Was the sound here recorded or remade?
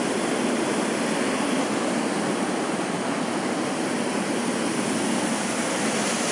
remade